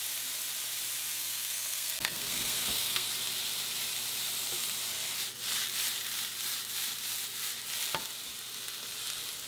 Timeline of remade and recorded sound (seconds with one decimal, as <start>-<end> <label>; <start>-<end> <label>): 0.0-1.1 recorded; 1.1-3.1 remade; 3.1-9.5 recorded